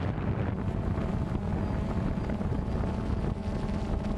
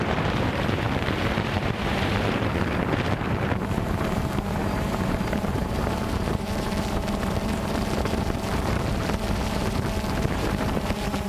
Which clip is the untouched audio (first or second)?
first